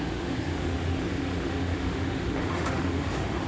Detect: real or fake fake